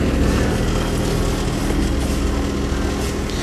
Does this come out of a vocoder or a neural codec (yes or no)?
no